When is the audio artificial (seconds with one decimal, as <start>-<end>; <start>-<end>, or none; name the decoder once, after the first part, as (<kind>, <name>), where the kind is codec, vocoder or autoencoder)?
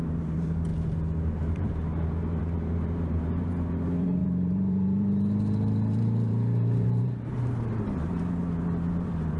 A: 0.0-0.7 (vocoder, BigVGAN v2); 1.5-9.4